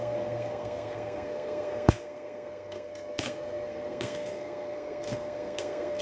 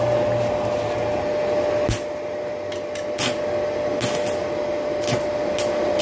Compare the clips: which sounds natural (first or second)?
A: second